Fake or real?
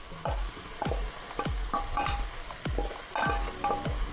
real